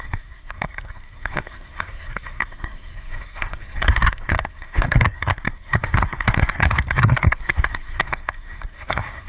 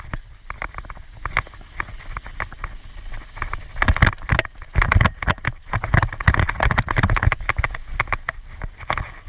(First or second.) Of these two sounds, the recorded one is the second